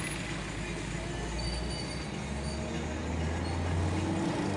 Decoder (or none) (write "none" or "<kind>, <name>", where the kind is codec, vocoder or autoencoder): none